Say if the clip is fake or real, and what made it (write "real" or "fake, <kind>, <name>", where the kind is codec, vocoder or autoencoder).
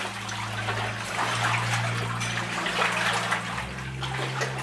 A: real